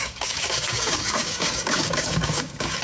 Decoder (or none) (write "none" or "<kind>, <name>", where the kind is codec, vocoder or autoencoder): codec, DAC